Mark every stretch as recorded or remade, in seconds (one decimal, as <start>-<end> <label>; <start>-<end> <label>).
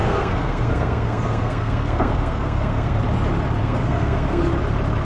0.0-3.0 remade; 3.0-3.6 recorded; 3.6-4.4 remade; 4.4-5.0 recorded